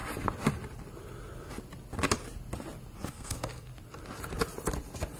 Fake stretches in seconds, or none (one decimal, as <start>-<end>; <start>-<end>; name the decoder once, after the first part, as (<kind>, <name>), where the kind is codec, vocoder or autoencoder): 3.1-3.7 (codec, SNAC)